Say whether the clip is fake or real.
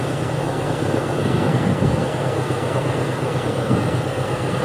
fake